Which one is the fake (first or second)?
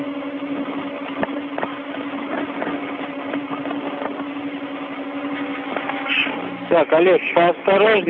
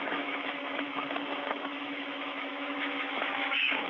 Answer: second